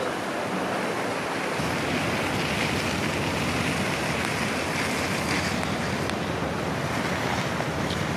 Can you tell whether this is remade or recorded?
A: recorded